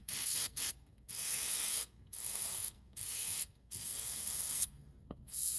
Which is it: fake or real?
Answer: fake